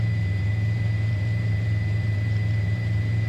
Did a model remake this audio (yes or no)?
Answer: yes